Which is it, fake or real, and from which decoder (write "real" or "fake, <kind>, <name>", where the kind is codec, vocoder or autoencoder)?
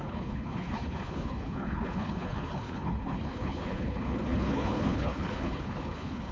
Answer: fake, codec, HILCodec